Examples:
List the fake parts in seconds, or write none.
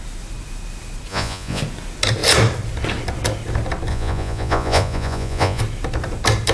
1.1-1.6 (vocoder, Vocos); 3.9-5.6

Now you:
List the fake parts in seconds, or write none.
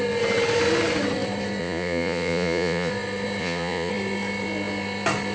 1.6-2.9 (vocoder, Vocos); 3.4-3.9